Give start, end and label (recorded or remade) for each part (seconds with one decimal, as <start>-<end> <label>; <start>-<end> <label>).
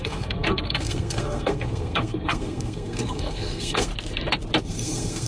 0.0-3.9 remade; 3.9-4.6 recorded; 4.6-5.3 remade